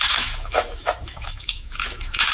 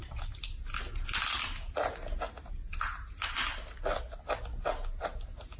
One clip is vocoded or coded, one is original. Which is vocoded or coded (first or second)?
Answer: first